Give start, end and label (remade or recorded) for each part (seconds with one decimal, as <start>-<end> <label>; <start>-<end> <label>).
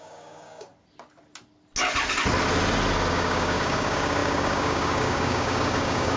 0.0-0.7 remade; 0.7-3.1 recorded; 3.1-6.2 remade